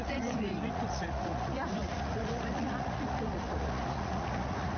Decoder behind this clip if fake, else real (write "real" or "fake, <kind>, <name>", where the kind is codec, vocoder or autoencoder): fake, vocoder, Vocos